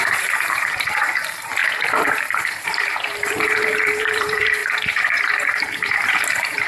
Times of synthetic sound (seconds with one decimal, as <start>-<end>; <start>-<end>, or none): 0.0-6.7